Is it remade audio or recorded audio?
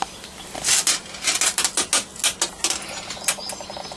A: recorded